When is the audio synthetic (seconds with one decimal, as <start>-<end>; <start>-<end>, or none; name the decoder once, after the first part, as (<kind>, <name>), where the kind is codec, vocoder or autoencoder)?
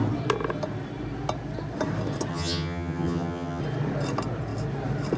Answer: 2.3-3.6 (vocoder, HiFi-GAN)